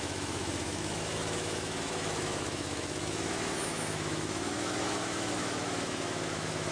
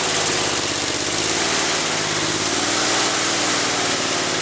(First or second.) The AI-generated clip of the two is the first